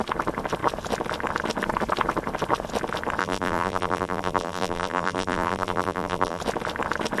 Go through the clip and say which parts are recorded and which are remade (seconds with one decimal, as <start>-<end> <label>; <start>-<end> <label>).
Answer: 0.0-3.2 recorded; 3.2-6.4 remade; 6.4-7.2 recorded